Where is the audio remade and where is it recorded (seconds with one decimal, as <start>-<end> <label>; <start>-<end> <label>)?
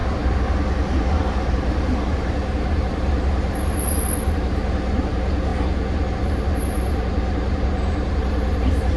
0.0-1.4 recorded; 1.4-4.6 remade; 4.6-5.1 recorded; 5.1-5.5 remade; 5.5-6.2 recorded; 6.2-9.0 remade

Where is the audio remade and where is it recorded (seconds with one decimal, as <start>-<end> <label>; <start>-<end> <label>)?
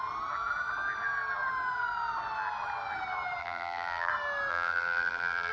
0.0-3.4 recorded; 3.4-4.1 remade; 4.1-4.5 recorded; 4.5-5.5 remade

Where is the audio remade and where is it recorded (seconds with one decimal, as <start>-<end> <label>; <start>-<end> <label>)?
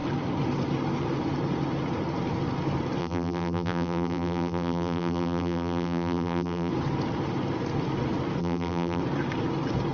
0.0-3.0 recorded; 3.0-6.7 remade; 6.7-8.4 recorded; 8.4-9.0 remade; 9.0-9.9 recorded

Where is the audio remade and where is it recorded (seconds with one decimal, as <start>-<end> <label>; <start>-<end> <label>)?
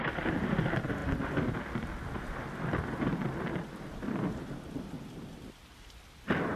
0.0-1.0 recorded; 1.0-1.6 remade; 1.6-3.1 recorded; 3.1-5.6 remade; 5.6-6.6 recorded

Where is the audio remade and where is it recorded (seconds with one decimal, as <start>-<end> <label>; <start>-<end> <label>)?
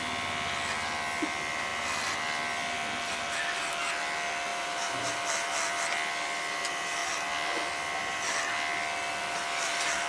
0.0-4.5 recorded; 4.5-5.1 remade; 5.1-10.1 recorded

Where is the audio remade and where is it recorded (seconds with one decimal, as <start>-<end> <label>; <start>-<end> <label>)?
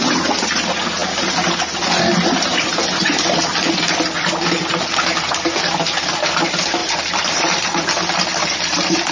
0.0-6.8 recorded; 6.8-9.1 remade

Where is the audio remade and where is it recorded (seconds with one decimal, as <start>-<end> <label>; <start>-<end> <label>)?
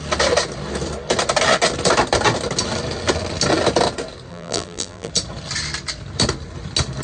0.0-4.3 recorded; 4.3-5.1 remade; 5.1-7.0 recorded